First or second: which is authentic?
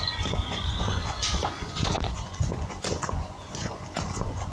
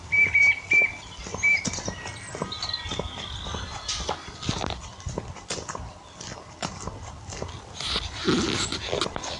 second